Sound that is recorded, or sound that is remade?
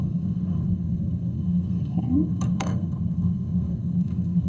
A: remade